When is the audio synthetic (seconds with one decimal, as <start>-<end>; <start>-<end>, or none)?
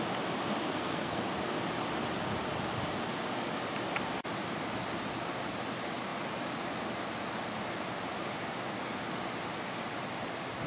0.6-1.2